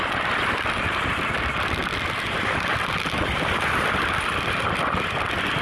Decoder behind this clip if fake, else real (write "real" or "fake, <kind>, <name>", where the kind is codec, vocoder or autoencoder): real